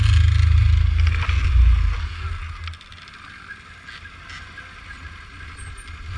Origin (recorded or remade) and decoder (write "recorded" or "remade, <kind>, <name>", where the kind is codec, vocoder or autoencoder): recorded